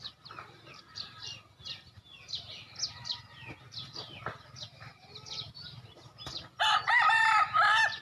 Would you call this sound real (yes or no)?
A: yes